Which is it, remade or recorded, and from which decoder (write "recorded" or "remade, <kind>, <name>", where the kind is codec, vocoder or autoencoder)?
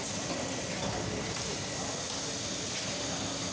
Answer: recorded